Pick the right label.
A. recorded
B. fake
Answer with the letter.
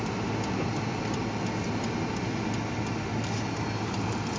A